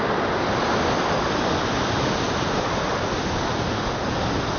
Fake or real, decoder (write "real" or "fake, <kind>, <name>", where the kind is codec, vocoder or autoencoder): real